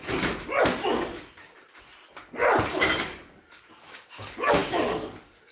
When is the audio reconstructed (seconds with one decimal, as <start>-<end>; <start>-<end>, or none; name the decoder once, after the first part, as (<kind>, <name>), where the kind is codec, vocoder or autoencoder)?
3.0-5.5 (codec, DAC)